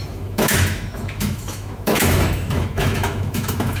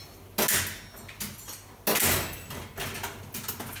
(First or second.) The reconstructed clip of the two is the first